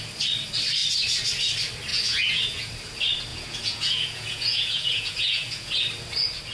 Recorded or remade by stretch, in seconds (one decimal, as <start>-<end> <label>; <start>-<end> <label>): 0.0-1.9 recorded; 1.9-2.7 remade; 2.7-3.3 recorded; 3.3-5.7 remade; 5.7-6.5 recorded